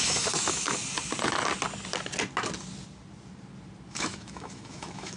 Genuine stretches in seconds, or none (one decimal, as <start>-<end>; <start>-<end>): 0.8-3.9